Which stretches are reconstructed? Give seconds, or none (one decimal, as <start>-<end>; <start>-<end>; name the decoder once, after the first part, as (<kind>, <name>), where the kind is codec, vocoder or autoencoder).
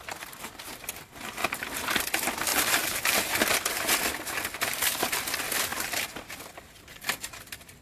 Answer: 2.5-3.2 (vocoder, BigVGAN v2); 5.7-6.2